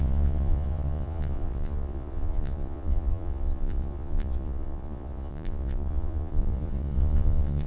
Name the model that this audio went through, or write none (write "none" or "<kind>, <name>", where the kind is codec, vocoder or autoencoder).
vocoder, Vocos